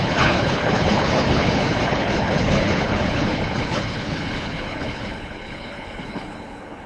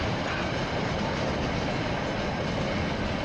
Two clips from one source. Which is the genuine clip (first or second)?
second